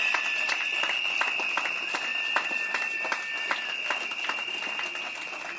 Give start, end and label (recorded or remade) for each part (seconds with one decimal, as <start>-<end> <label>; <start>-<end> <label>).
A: 0.0-5.6 recorded

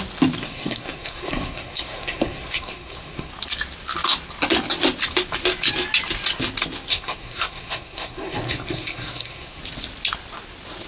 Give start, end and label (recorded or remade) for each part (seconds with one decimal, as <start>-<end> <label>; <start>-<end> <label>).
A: 0.0-0.4 recorded; 0.4-3.3 remade; 3.3-6.9 recorded; 6.9-9.6 remade; 9.6-10.9 recorded

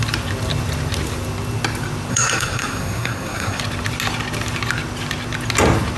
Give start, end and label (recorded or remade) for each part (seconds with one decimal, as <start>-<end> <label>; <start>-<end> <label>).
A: 0.0-2.1 recorded; 2.1-3.6 remade; 3.6-6.0 recorded

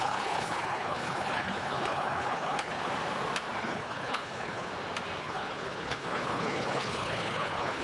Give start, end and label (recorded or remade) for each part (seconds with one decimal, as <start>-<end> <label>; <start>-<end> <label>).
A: 0.0-2.8 remade; 2.8-3.6 recorded; 3.6-4.7 remade; 4.7-5.2 recorded; 5.2-7.8 remade

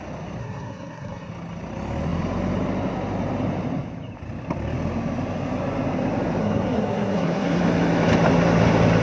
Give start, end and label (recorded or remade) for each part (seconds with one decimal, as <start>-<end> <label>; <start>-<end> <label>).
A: 0.0-0.4 recorded; 0.4-1.3 remade; 1.3-6.4 recorded; 6.4-7.6 remade; 7.6-9.0 recorded

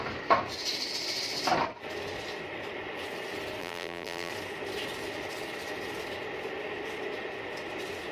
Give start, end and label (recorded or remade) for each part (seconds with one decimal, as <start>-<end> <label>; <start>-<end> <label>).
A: 0.0-3.6 recorded; 3.6-4.3 remade; 4.3-8.1 recorded

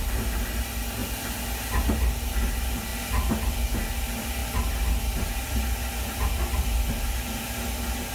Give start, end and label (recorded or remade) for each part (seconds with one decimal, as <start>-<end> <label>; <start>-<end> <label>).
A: 0.0-8.1 recorded